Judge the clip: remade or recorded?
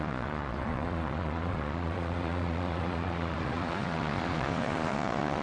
remade